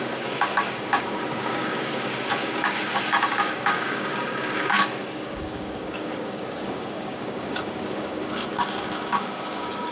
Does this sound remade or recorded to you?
remade